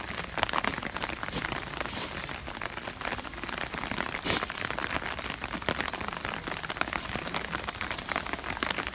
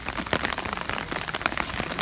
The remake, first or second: first